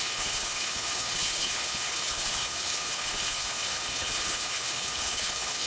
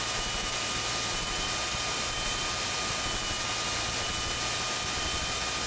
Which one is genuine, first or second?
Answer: second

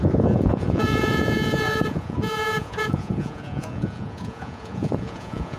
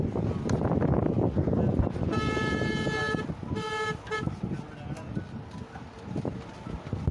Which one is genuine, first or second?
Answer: second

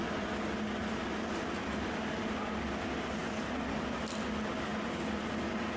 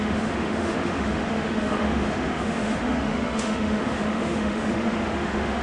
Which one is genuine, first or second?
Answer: first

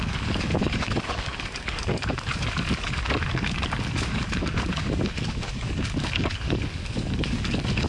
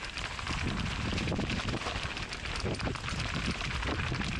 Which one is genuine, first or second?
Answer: second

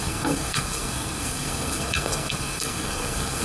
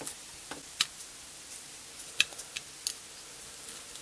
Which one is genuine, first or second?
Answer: second